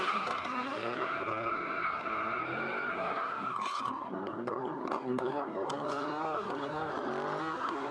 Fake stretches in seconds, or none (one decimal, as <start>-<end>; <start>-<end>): 0.0-2.4; 2.9-6.9; 7.4-7.9